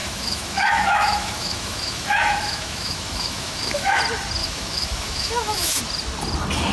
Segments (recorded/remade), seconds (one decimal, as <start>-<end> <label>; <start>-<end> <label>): 0.0-4.0 remade; 4.0-4.4 recorded; 4.4-5.8 remade; 5.8-6.7 recorded